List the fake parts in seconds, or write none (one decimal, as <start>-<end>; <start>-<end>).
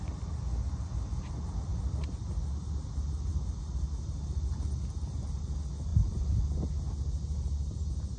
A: none